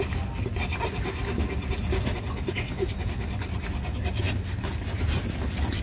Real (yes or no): yes